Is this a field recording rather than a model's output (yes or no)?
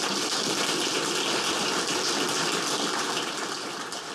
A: yes